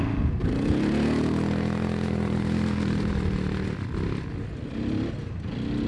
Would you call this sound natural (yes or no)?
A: yes